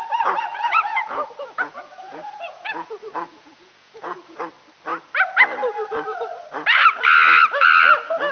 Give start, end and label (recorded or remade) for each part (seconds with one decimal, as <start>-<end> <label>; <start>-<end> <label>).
0.0-0.5 recorded; 0.5-4.4 remade; 4.4-8.3 recorded